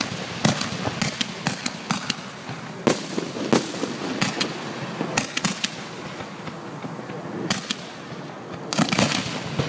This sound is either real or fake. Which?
real